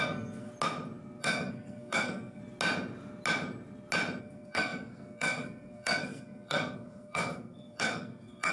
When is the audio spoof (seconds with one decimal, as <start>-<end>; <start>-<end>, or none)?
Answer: 0.0-0.5; 1.2-2.4; 4.2-8.5